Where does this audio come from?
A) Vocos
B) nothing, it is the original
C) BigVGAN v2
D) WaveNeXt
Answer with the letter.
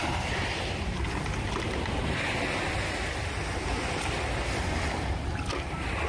B